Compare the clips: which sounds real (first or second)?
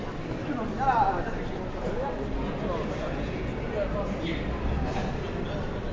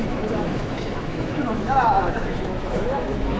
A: first